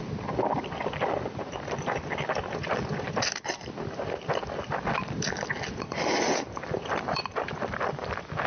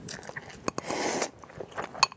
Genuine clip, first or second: second